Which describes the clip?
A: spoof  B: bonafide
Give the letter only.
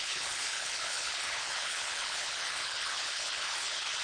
A